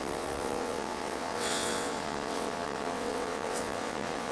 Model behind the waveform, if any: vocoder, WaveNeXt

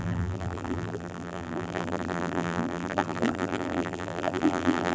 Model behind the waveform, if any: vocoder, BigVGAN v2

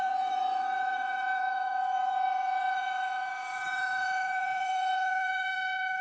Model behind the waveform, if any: vocoder, Vocos